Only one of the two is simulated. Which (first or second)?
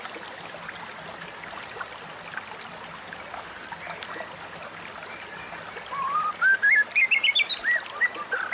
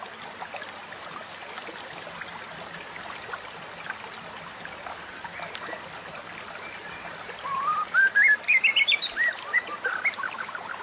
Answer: second